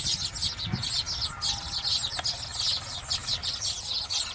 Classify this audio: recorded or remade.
recorded